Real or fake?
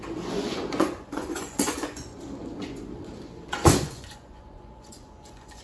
fake